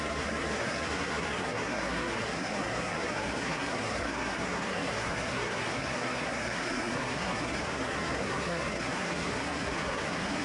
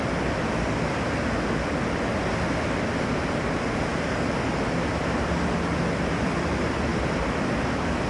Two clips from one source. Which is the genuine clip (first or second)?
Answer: second